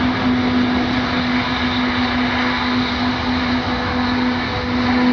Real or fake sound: real